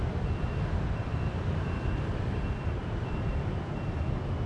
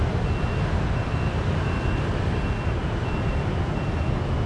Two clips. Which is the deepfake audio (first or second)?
first